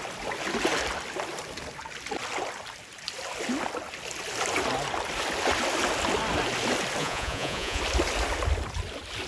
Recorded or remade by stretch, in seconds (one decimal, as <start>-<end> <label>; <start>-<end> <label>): 0.0-7.0 recorded; 7.0-7.8 remade; 7.8-9.3 recorded